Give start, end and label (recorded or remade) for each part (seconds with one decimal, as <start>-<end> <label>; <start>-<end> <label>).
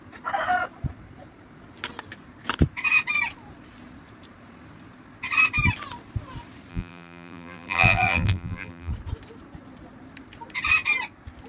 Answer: 0.0-6.7 recorded; 6.7-8.9 remade; 8.9-11.5 recorded